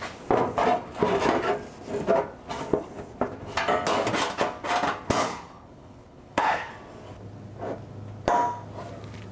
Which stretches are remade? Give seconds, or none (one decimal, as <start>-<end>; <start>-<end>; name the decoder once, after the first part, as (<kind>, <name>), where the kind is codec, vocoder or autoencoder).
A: 5.2-6.7 (codec, HILCodec)

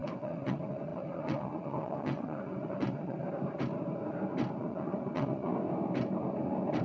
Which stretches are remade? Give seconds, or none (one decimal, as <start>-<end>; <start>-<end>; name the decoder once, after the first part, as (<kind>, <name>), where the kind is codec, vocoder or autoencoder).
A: 0.0-3.2 (vocoder, WaveNeXt); 4.6-5.5

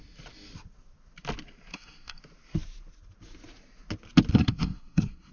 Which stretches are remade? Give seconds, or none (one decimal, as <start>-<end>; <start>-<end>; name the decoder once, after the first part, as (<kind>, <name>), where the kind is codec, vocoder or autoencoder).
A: 1.7-2.2 (codec, SNAC); 4.3-5.3

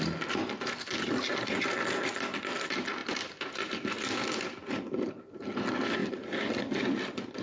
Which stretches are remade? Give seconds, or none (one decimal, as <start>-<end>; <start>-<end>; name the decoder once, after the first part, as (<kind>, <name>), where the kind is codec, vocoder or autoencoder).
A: 3.0-4.8 (vocoder, BigVGAN v2); 6.0-7.4

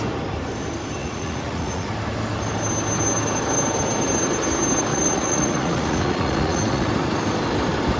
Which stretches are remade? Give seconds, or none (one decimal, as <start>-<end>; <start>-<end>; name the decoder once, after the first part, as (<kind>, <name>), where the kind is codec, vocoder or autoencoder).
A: 1.0-1.9 (vocoder, Vocos); 4.9-6.9

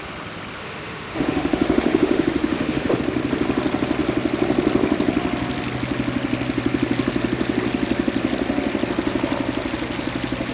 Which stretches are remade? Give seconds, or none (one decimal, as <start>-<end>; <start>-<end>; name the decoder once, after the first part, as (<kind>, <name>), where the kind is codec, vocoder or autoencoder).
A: 0.6-3.0 (autoencoder, DAC-VAE)